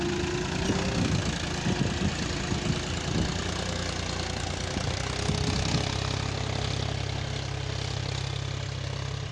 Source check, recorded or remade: recorded